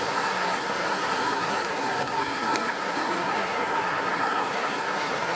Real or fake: fake